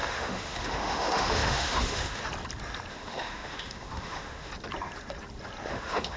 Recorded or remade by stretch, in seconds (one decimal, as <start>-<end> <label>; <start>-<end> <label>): 0.0-2.2 remade; 2.2-2.9 recorded; 2.9-4.5 remade; 4.5-5.7 recorded; 5.7-6.2 remade

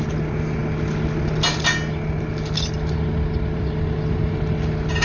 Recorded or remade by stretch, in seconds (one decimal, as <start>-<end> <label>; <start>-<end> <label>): 0.0-5.0 recorded

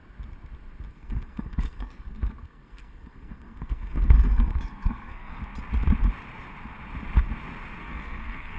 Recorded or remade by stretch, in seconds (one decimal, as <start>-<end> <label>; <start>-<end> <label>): 0.0-0.9 recorded; 0.9-5.4 remade; 5.4-7.8 recorded; 7.8-8.6 remade

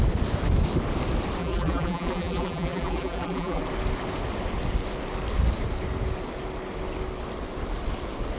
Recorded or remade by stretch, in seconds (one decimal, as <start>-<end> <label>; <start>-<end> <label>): 0.0-1.4 recorded; 1.4-3.6 remade; 3.6-8.4 recorded

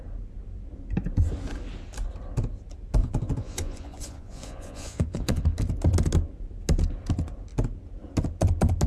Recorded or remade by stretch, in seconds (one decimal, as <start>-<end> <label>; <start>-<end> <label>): 0.0-3.0 recorded; 3.0-5.4 remade; 5.4-8.9 recorded